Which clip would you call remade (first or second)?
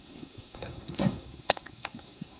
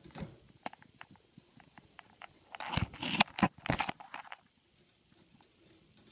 first